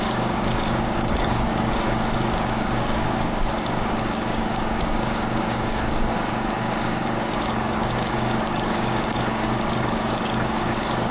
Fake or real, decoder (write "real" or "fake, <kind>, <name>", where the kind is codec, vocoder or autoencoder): fake, codec, DAC